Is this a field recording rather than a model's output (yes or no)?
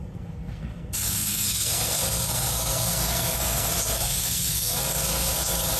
no